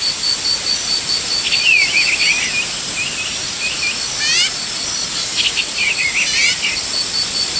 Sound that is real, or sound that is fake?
real